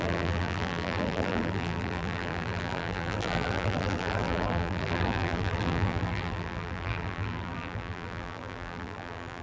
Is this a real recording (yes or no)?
no